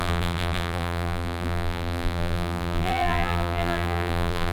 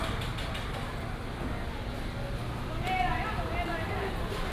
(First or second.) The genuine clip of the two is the second